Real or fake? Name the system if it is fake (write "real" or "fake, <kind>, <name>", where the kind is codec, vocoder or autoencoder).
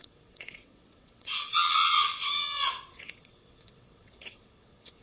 fake, vocoder, WaveNeXt